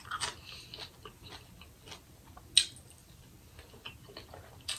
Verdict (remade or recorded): recorded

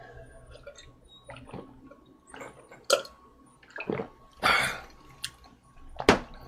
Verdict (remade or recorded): recorded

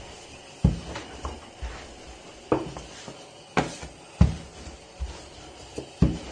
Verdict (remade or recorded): recorded